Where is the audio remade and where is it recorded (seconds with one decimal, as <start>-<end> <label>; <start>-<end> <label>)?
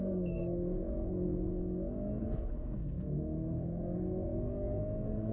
0.0-1.5 remade; 1.5-2.2 recorded; 2.2-5.3 remade